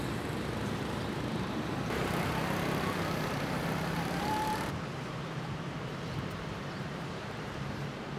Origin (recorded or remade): remade